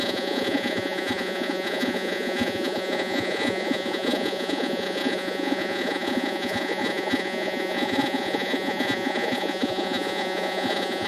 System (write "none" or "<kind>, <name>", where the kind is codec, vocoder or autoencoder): vocoder, Vocos